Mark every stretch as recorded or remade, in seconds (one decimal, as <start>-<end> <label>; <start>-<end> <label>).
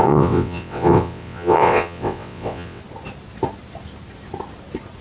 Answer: 0.0-2.8 remade; 2.8-5.0 recorded